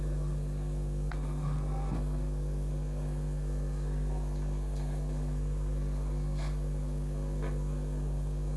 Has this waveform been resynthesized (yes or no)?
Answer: yes